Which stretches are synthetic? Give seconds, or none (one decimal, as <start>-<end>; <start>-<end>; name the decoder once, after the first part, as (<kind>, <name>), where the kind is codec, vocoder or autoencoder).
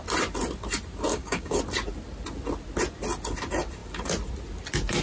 1.1-1.6 (codec, DAC)